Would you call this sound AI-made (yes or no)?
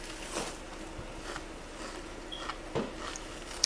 no